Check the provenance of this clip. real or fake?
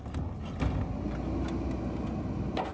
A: real